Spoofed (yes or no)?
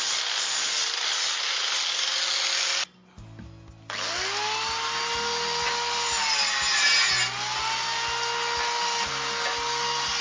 no